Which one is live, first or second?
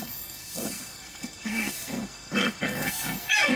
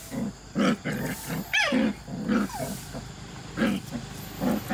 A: second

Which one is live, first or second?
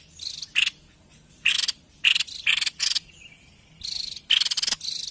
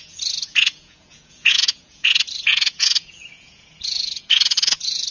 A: first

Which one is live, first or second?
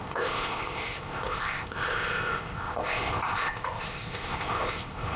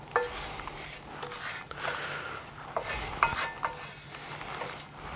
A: second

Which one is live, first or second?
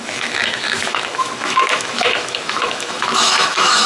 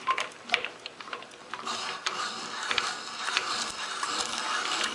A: second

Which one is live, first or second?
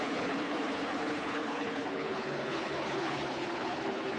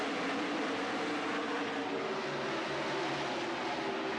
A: second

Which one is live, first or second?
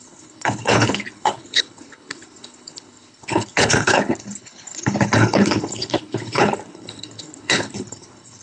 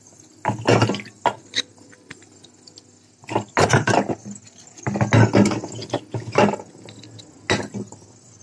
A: second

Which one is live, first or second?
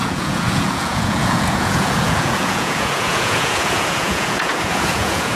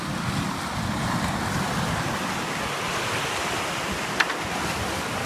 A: second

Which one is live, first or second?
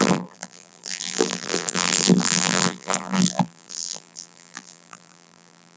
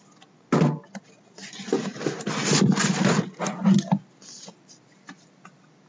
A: second